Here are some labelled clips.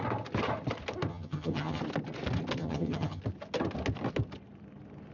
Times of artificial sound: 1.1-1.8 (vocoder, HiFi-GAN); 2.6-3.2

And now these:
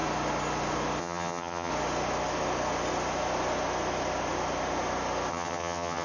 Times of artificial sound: 1.0-1.7 (vocoder, HiFi-GAN); 5.3-6.0

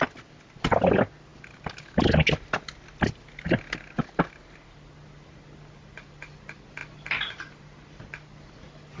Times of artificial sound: none

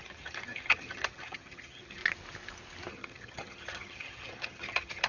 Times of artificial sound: 0.0-2.0 (vocoder, HiFi-GAN); 2.9-5.1

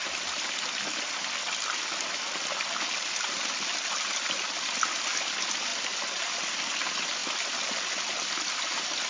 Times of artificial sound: none

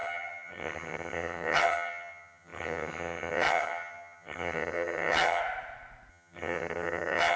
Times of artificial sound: 0.0-5.4 (vocoder, HiFi-GAN); 6.1-7.4

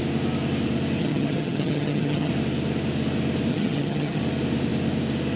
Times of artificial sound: 1.0-2.3 (vocoder, HiFi-GAN); 3.5-4.2

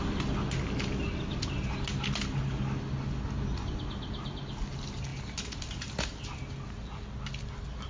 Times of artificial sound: none